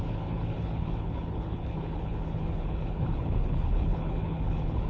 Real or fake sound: fake